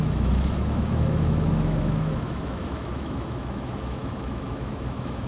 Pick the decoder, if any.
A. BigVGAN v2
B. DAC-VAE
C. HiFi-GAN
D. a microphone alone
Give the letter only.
B